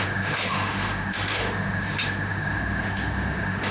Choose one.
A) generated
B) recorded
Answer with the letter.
A